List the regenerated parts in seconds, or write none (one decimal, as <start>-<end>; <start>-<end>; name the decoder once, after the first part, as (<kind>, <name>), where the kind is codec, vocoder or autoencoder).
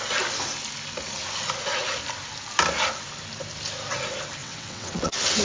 4.4-5.4 (vocoder, WaveNeXt)